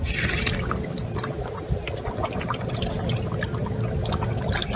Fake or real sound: real